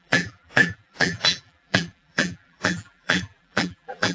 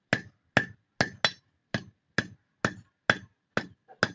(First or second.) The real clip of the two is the second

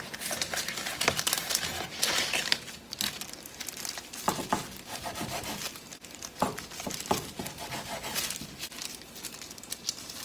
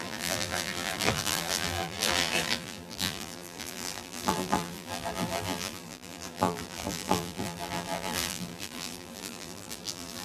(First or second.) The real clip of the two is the first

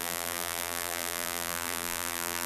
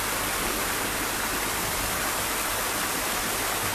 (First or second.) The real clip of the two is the second